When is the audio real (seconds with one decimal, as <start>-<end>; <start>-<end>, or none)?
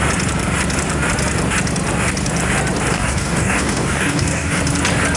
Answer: 0.0-2.9; 4.6-5.2